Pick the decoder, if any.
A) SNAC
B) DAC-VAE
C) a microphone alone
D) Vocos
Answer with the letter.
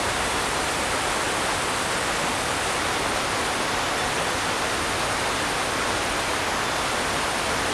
C